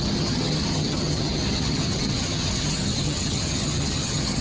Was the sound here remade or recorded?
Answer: remade